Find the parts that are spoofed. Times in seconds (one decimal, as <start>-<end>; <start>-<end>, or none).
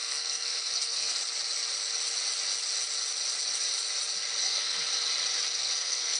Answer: 0.0-1.2; 4.4-4.9; 5.6-6.2